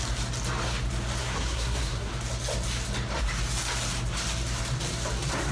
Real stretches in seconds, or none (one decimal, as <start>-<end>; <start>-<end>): 0.0-1.2; 2.1-5.5